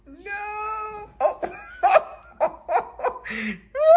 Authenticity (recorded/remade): recorded